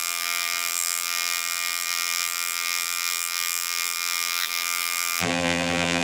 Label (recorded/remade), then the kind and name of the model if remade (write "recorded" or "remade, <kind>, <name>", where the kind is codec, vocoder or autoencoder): remade, vocoder, BigVGAN v2